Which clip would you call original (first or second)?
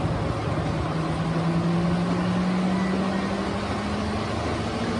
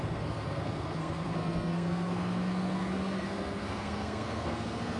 first